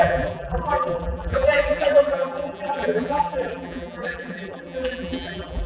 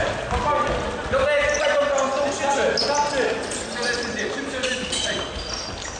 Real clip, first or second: second